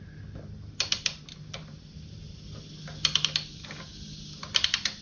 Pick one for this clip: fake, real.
real